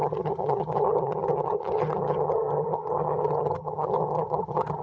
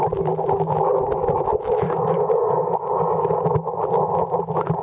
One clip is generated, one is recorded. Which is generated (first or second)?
first